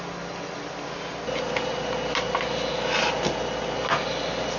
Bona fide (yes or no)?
yes